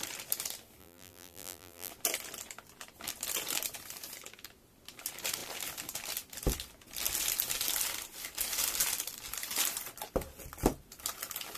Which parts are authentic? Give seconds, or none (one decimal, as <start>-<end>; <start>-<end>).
0.0-0.8; 1.9-11.6